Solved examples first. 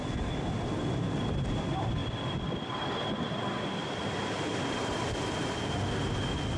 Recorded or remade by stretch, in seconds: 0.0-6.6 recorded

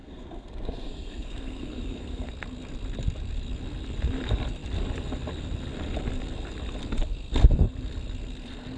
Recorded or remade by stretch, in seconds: 0.0-2.3 remade; 2.3-8.8 recorded

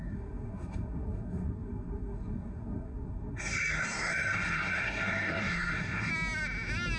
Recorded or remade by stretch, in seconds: 0.0-6.1 remade; 6.1-7.0 recorded

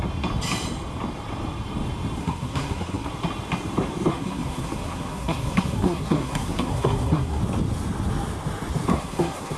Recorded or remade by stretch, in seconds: 0.0-2.2 recorded; 2.2-3.1 remade; 3.1-4.1 recorded; 4.1-7.4 remade; 7.4-8.9 recorded; 8.9-9.6 remade

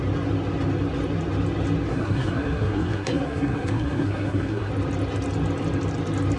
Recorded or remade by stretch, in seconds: 0.0-1.9 recorded; 1.9-4.7 remade; 4.7-6.4 recorded

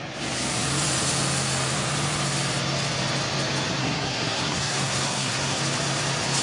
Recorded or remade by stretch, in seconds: 0.0-3.8 recorded; 3.8-5.6 remade; 5.6-6.4 recorded

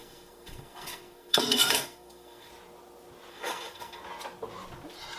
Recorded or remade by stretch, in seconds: 0.0-2.5 remade; 2.5-3.3 recorded; 3.3-4.0 remade; 4.0-5.2 recorded

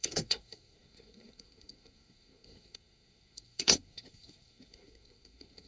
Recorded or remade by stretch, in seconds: 0.0-5.7 remade